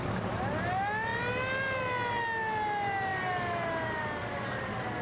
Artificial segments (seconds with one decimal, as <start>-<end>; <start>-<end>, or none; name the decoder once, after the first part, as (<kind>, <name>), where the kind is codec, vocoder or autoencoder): none

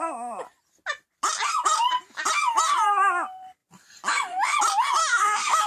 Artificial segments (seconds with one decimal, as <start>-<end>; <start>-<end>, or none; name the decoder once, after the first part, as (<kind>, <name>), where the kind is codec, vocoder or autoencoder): 5.0-5.7 (autoencoder, DAC-VAE)

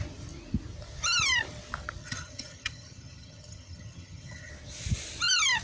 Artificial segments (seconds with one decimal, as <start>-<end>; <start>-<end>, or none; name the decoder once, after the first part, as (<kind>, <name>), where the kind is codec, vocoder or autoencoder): 2.0-4.5 (vocoder, HiFi-GAN)

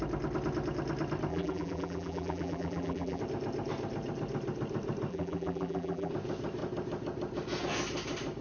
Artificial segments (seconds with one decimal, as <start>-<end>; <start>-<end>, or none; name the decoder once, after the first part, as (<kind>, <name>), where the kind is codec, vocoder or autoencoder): 1.3-3.2 (vocoder, BigVGAN v2); 5.1-6.1

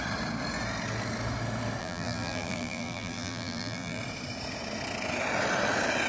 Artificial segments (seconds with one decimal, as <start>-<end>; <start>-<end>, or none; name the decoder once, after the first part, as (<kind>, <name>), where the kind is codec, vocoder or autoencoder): 1.8-4.0 (vocoder, BigVGAN v2)

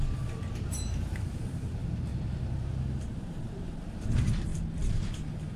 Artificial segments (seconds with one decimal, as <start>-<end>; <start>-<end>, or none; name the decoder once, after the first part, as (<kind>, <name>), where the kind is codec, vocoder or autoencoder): 0.0-2.1 (vocoder, BigVGAN v2); 3.4-4.5; 5.0-5.6

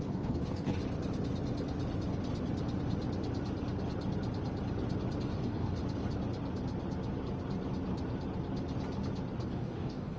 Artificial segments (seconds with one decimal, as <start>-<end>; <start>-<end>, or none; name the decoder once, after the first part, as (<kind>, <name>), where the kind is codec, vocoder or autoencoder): 0.0-0.8 (codec, DAC); 5.2-5.8; 9.5-10.2